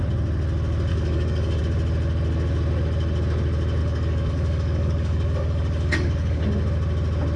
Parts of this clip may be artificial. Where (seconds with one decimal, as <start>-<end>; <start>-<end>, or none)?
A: 0.9-1.6; 3.8-6.4